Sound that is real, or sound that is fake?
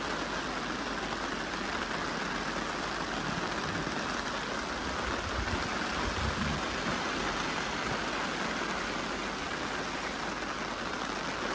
real